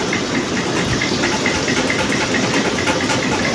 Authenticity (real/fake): real